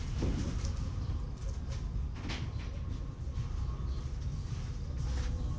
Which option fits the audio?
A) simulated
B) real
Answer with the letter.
B